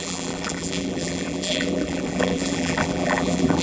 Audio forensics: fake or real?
fake